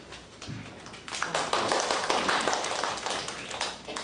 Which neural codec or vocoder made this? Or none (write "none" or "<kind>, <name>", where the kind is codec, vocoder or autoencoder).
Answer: none